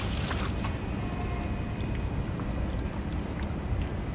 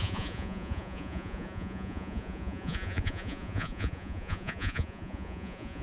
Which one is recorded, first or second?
first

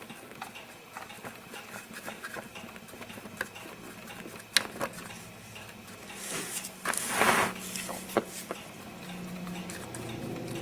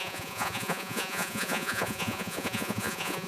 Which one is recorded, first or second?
first